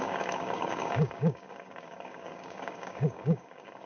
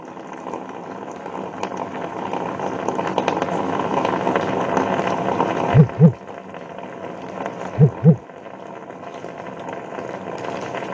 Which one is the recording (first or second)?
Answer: second